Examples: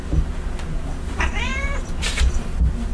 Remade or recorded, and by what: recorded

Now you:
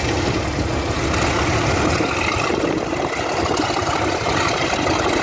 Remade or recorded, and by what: recorded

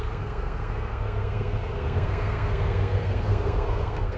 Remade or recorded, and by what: remade, codec, SNAC